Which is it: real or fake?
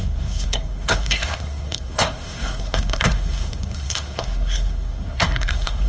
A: fake